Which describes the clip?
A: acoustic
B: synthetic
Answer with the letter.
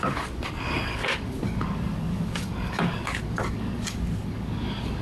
B